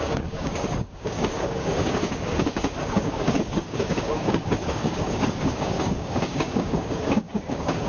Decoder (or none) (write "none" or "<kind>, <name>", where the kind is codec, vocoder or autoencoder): codec, DAC